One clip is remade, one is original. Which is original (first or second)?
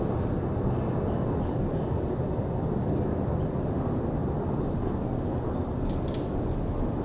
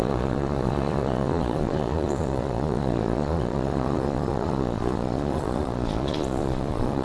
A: first